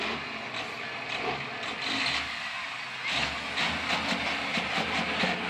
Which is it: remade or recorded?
recorded